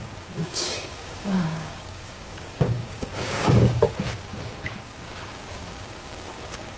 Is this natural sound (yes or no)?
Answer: no